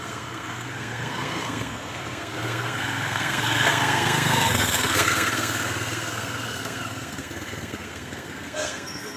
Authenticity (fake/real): fake